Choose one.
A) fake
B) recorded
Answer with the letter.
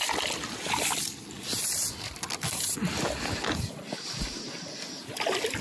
B